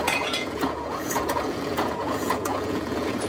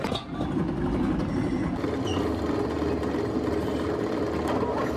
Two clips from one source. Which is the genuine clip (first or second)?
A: second